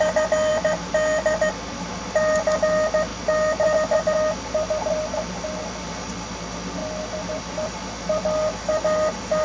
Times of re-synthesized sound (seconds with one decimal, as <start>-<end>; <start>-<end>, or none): none